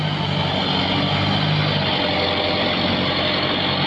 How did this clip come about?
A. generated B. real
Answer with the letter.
B